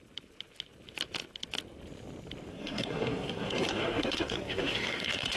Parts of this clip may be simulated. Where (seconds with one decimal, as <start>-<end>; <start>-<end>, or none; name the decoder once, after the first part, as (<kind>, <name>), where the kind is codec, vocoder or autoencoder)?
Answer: 2.5-5.4 (codec, SNAC)